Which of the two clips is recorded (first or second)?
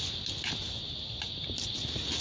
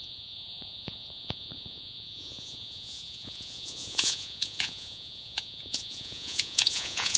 first